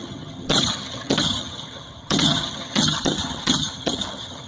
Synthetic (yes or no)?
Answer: yes